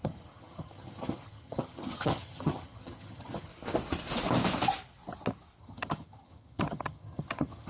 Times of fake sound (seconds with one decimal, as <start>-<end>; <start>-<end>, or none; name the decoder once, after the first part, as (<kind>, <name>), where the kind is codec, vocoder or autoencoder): 0.0-3.5 (vocoder, HiFi-GAN); 5.6-7.7